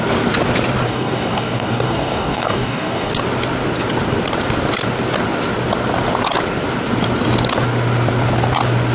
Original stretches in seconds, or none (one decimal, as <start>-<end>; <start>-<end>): 0.0-0.9; 3.1-8.9